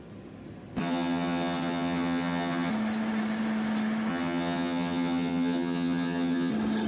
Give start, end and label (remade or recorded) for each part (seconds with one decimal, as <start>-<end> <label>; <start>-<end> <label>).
0.0-0.8 recorded; 0.8-2.7 remade; 2.7-4.1 recorded; 4.1-6.5 remade; 6.5-6.9 recorded